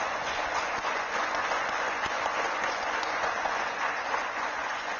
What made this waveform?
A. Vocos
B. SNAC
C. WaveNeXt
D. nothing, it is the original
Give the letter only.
A